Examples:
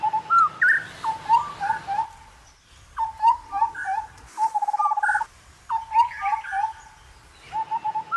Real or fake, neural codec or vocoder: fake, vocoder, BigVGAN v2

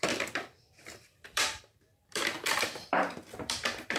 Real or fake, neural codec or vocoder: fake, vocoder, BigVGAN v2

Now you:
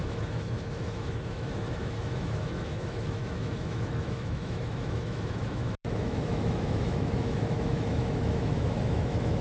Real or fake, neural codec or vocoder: fake, autoencoder, DAC-VAE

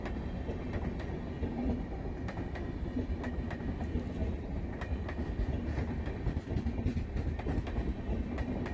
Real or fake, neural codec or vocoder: real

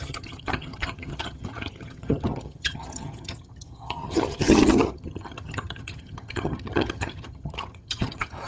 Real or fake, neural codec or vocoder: fake, vocoder, HiFi-GAN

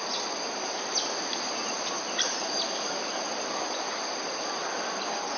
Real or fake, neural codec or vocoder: real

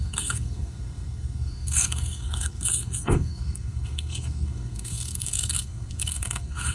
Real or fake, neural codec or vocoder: fake, codec, SNAC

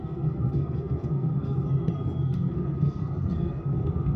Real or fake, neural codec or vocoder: fake, codec, SNAC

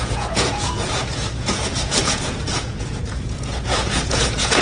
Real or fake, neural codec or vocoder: fake, vocoder, Vocos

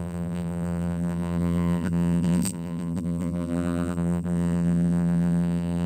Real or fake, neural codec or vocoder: fake, vocoder, BigVGAN v2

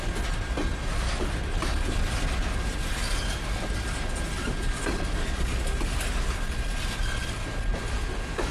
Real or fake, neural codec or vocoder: real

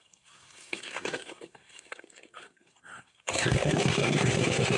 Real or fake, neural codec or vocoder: fake, codec, SNAC